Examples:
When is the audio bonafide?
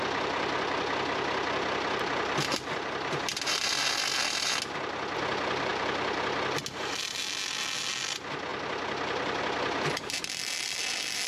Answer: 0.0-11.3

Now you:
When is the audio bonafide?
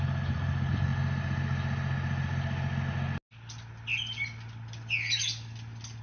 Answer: 0.0-6.0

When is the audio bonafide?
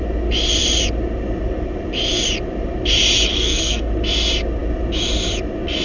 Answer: 0.0-3.3; 3.9-5.8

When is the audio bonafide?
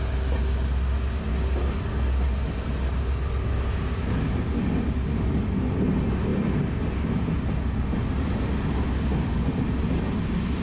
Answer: 0.0-10.6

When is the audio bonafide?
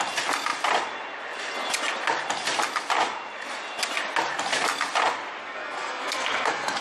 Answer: 0.0-5.4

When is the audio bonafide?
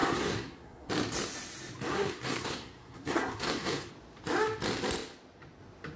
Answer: 0.9-1.9; 3.9-6.0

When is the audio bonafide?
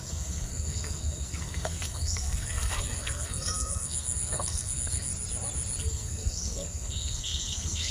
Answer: 5.1-5.8